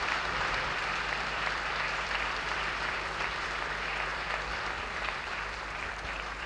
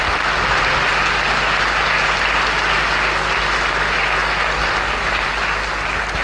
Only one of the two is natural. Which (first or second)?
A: second